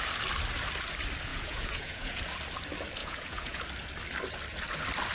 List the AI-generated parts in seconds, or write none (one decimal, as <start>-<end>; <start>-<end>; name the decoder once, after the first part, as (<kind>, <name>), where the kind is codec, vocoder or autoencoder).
1.3-2.2 (vocoder, Vocos); 3.0-3.6